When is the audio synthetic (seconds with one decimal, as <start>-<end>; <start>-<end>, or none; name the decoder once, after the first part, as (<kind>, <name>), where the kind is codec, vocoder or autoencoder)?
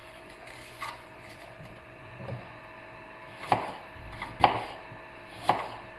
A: 0.0-2.6 (vocoder, Vocos)